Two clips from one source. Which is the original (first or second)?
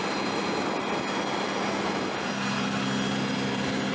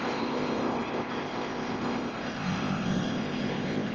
first